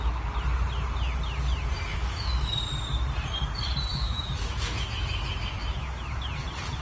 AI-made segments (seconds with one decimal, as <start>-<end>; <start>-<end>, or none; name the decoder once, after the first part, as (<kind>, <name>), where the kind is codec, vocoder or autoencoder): 1.9-2.5 (autoencoder, DAC-VAE); 3.9-6.0